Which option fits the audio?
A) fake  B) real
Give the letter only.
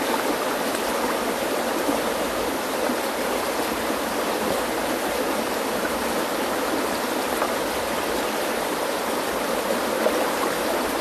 B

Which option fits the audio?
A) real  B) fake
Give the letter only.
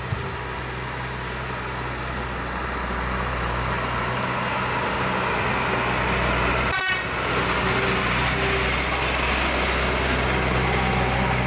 A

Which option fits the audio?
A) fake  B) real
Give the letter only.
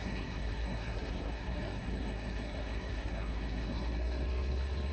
A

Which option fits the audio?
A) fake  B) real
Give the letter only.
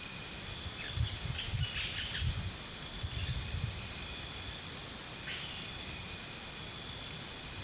B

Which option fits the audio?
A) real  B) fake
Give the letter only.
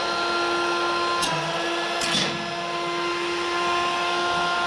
A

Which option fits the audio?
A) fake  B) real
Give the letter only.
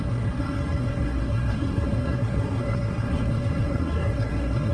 A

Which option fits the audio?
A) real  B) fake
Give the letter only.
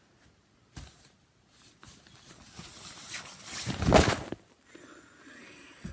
A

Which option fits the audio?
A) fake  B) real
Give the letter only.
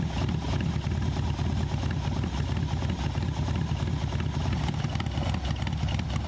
B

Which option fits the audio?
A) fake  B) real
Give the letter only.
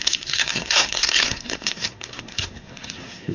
A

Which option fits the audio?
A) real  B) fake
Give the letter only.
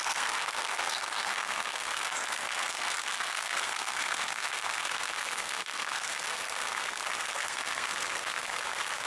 B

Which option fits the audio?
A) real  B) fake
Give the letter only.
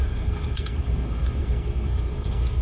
B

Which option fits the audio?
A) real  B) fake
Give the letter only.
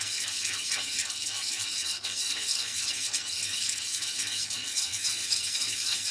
B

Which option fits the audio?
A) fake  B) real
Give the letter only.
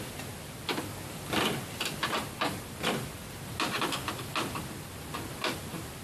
B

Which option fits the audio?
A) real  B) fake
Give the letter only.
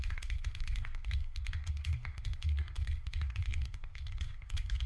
B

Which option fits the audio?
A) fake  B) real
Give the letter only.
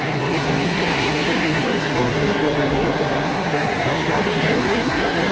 A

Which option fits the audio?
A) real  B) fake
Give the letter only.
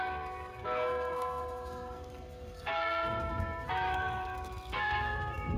B